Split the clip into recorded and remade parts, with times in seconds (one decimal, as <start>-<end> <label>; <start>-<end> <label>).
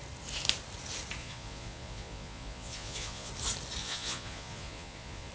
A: 0.0-1.2 recorded; 1.2-3.3 remade; 3.3-3.8 recorded; 3.8-5.3 remade